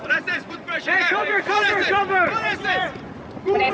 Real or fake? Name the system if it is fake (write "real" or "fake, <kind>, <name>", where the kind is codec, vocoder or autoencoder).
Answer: fake, vocoder, Vocos